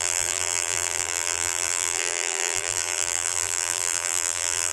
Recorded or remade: remade